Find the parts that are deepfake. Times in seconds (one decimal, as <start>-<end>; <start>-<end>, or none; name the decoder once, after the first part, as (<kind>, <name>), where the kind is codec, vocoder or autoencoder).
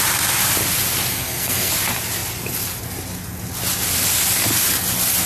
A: 1.1-1.7 (codec, SNAC)